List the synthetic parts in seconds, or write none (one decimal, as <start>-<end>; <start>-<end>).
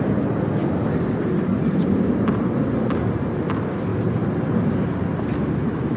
0.6-2.7; 3.9-5.2